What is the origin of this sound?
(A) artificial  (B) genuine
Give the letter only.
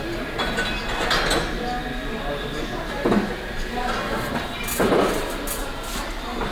B